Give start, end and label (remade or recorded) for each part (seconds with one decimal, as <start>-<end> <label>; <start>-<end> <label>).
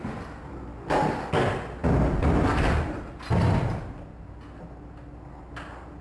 0.0-6.0 recorded